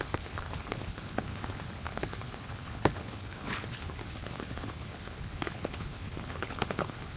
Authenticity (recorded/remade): remade